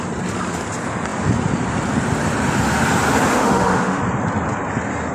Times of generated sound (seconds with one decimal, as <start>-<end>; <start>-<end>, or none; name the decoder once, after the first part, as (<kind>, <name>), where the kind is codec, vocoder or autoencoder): 3.3-4.0 (autoencoder, DAC-VAE)